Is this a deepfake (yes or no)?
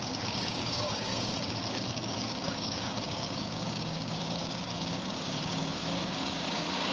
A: yes